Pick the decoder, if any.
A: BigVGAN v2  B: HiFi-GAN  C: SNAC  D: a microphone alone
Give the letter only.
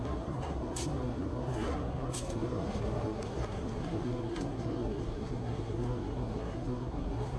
C